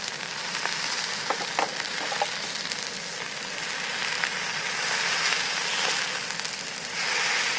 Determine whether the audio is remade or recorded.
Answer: recorded